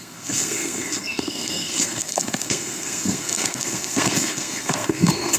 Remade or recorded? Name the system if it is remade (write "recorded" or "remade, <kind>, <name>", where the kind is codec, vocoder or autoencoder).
remade, codec, SNAC